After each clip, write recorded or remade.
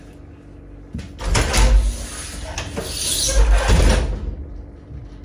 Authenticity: recorded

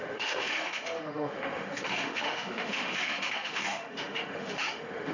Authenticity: remade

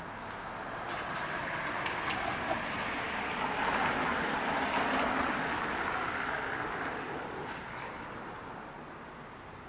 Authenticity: recorded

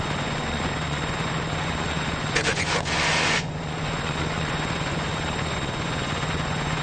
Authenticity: remade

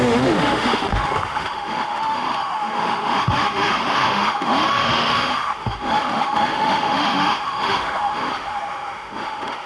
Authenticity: remade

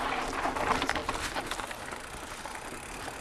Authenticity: recorded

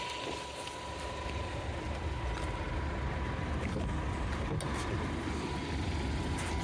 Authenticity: recorded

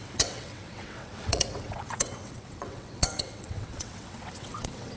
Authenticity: remade